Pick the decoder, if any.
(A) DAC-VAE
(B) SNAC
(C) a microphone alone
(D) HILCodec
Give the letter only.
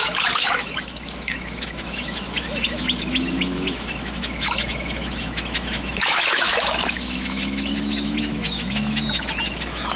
A